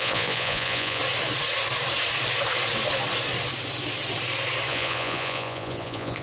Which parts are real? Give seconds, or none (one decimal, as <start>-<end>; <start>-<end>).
1.0-4.7